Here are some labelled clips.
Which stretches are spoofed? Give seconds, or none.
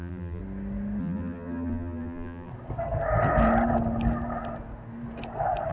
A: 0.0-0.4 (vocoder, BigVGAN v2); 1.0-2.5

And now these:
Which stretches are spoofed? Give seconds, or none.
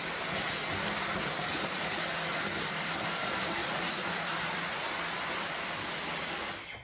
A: 1.5-2.0 (vocoder, Vocos); 3.6-5.0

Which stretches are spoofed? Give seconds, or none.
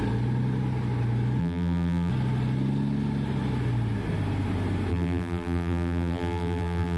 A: 1.4-2.1 (vocoder, BigVGAN v2); 4.9-7.0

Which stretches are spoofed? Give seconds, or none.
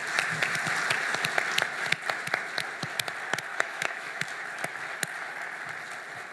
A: 3.5-4.2 (autoencoder, DAC-VAE)